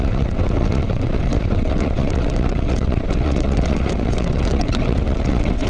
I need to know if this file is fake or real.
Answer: fake